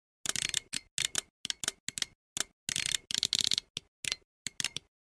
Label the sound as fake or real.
real